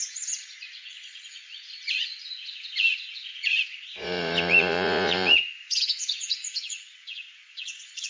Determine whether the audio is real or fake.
fake